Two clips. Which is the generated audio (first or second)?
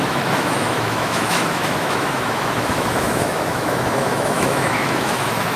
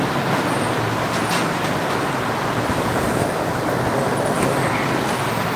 first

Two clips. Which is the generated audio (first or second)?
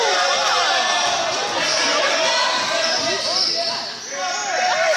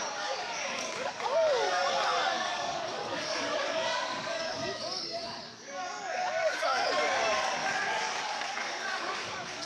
second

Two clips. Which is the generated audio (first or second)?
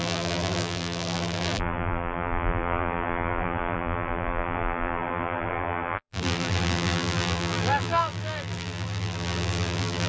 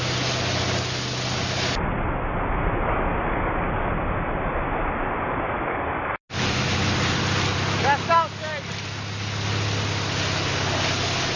first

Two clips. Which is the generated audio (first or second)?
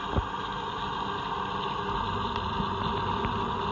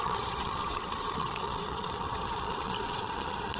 second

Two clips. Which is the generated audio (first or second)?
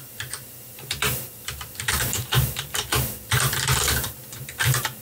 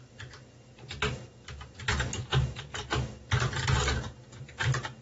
first